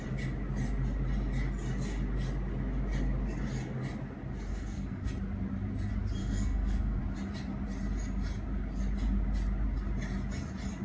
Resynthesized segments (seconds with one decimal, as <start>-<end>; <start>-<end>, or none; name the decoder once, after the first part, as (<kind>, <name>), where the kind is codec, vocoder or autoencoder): 4.5-5.1 (codec, SNAC); 6.2-7.0